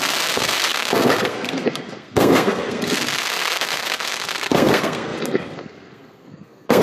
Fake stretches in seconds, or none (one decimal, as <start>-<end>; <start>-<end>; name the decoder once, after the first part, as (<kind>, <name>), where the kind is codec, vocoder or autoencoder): 0.0-6.8 (codec, SNAC)